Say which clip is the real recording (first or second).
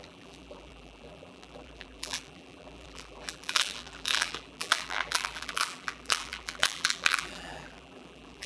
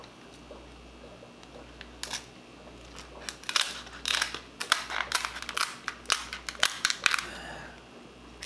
second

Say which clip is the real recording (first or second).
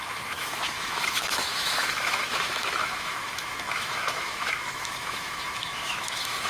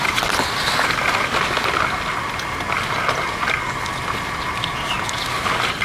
second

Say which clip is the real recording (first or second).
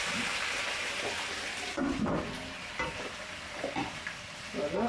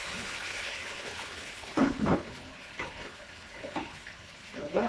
first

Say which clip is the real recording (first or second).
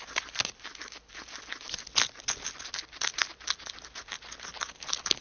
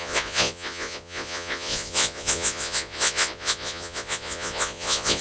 first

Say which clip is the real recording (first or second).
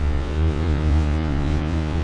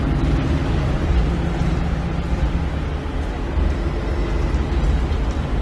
second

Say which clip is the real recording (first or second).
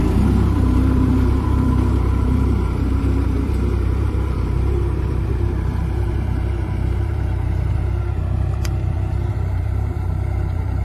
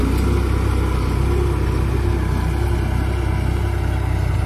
second